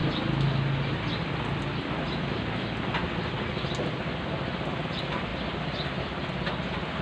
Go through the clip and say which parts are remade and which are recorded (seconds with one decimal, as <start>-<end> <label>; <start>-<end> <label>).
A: 0.0-7.0 recorded